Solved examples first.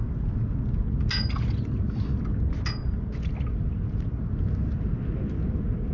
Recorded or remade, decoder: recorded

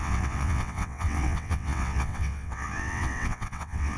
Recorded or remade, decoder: remade, vocoder, WaveNeXt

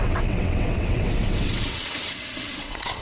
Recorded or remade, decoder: remade, vocoder, WaveNeXt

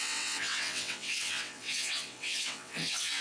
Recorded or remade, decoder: remade, vocoder, WaveNeXt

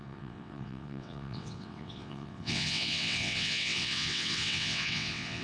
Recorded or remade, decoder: remade, vocoder, WaveNeXt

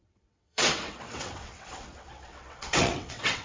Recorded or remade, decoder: remade, vocoder, WaveNeXt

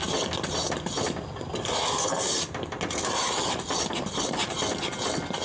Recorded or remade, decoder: recorded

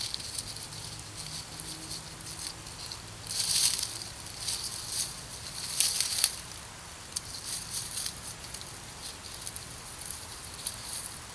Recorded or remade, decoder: recorded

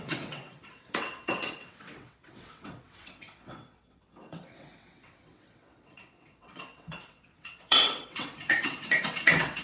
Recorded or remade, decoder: remade, vocoder, WaveNeXt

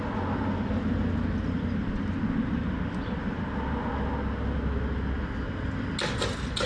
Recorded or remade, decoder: recorded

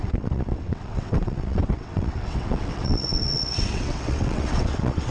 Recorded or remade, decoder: remade, vocoder, WaveNeXt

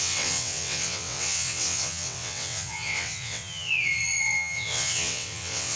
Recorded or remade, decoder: remade, vocoder, WaveNeXt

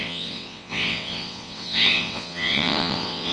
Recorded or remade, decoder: remade, vocoder, WaveNeXt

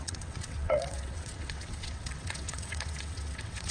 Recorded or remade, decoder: remade, vocoder, WaveNeXt